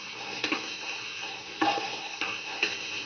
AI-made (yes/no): yes